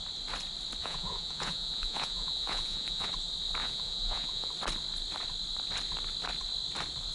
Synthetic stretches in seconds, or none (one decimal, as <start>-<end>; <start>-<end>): 0.8-3.1; 3.6-4.5